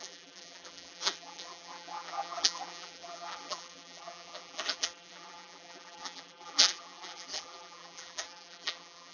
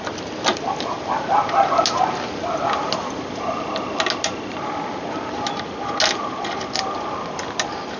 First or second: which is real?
second